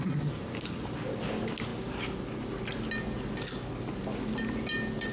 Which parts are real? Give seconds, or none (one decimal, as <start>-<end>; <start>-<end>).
0.0-5.1